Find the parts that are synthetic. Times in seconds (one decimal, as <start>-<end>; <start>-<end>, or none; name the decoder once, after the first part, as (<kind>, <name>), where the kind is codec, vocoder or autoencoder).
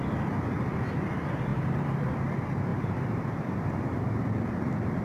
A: 1.5-2.2 (vocoder, BigVGAN v2); 2.7-4.2